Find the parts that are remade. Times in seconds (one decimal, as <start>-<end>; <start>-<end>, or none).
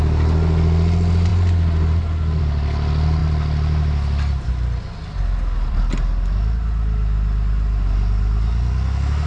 none